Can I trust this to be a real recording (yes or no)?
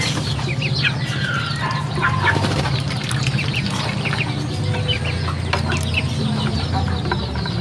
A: yes